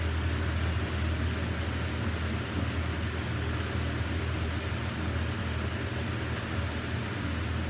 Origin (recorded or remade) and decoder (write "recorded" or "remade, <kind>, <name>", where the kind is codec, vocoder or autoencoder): recorded